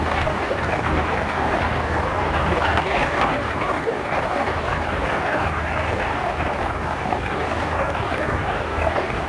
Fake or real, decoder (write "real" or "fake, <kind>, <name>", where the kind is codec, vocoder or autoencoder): fake, codec, DAC